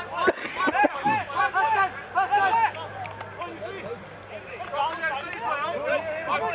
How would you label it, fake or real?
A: real